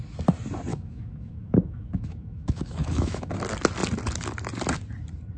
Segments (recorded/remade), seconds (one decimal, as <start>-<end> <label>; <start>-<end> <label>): 0.0-0.7 recorded; 0.7-3.3 remade; 3.3-5.4 recorded